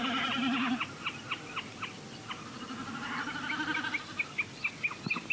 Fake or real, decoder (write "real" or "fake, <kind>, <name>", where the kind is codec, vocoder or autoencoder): real